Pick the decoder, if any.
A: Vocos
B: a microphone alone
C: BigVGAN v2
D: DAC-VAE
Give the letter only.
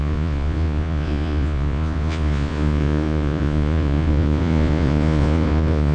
A